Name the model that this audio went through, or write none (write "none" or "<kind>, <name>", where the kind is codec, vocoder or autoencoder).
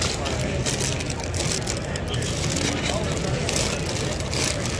none